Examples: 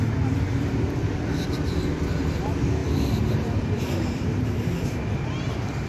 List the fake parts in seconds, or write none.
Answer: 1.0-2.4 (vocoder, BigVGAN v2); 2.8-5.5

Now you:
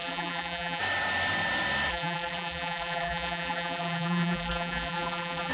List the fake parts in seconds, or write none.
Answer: 0.0-0.8 (vocoder, BigVGAN v2); 1.9-5.5